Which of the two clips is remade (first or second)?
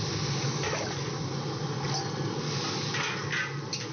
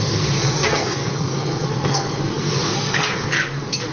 second